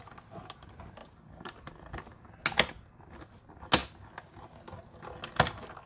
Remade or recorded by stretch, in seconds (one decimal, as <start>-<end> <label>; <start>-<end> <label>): 0.0-1.0 recorded; 1.0-2.4 remade; 2.4-5.9 recorded